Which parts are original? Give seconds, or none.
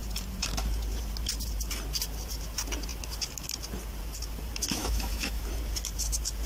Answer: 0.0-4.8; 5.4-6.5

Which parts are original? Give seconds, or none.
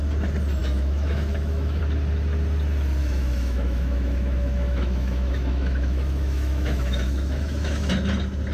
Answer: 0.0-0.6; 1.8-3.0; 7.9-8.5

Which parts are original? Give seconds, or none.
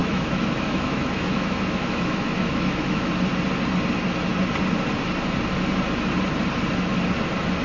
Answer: 3.1-7.6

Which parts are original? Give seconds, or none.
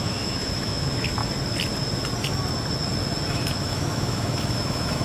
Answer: 1.2-3.3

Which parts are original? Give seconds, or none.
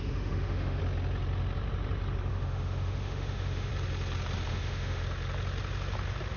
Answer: 0.8-2.3; 3.7-4.5; 5.0-6.4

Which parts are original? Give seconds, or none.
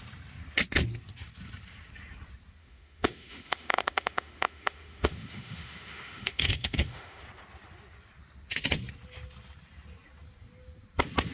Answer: 0.0-2.6; 7.2-11.3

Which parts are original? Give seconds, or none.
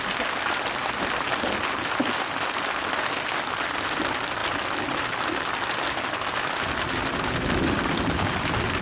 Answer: 0.0-8.8